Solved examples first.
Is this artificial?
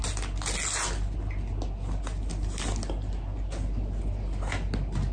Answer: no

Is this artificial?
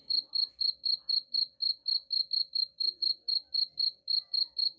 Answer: no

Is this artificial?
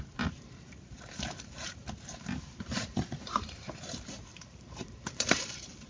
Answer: yes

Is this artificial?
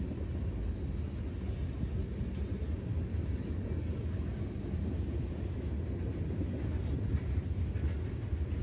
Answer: no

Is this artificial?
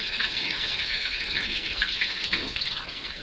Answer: yes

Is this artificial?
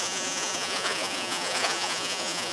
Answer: yes